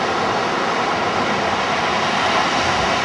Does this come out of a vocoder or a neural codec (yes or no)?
no